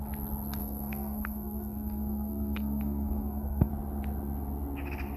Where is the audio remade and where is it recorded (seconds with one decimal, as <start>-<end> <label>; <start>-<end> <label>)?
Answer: 0.0-0.6 recorded; 0.6-3.7 remade; 3.7-5.2 recorded